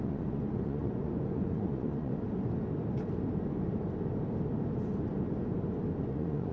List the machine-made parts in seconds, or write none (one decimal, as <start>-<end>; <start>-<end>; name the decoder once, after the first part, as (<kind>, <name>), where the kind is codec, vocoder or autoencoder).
0.0-2.1 (vocoder, Vocos); 6.0-6.5